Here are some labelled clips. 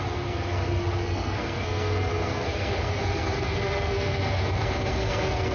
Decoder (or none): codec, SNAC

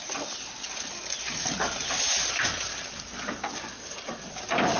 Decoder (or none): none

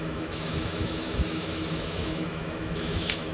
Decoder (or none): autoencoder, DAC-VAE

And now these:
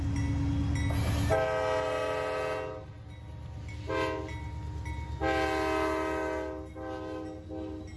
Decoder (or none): none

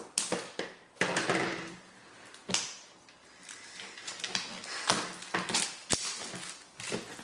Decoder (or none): none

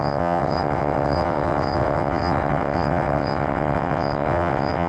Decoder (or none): vocoder, WaveNeXt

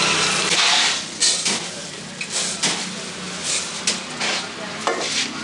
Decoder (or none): none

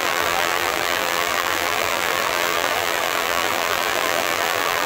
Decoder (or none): vocoder, BigVGAN v2